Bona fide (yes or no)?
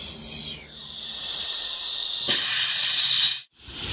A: yes